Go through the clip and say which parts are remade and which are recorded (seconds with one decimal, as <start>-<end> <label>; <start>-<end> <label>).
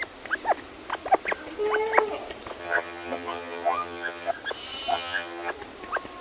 0.0-2.6 recorded; 2.6-4.3 remade; 4.3-4.9 recorded; 4.9-5.5 remade; 5.5-6.2 recorded